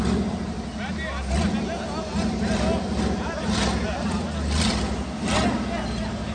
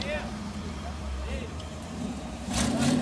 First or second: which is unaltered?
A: first